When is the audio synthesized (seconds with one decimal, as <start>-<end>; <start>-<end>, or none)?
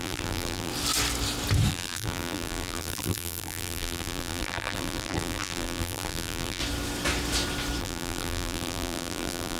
0.0-0.7; 1.7-6.6; 7.8-9.6